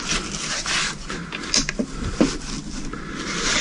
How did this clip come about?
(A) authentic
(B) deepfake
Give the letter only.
A